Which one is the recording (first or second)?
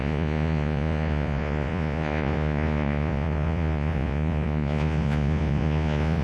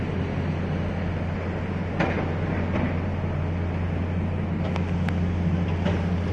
second